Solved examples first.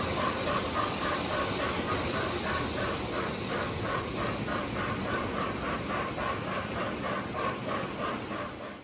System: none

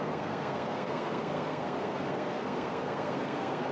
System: codec, SNAC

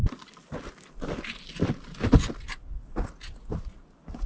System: none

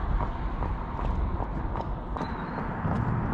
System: none